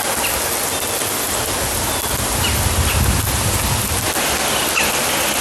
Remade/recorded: recorded